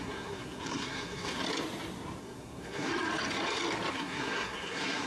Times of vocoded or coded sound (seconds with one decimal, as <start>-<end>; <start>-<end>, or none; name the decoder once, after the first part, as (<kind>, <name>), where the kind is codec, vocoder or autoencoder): 0.0-1.4 (codec, SNAC); 2.2-2.9; 3.9-5.1